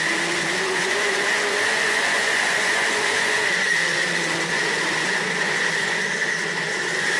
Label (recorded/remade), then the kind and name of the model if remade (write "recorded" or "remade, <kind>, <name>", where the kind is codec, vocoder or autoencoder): remade, vocoder, Vocos